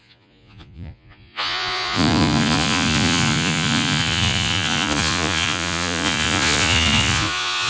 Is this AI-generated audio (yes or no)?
yes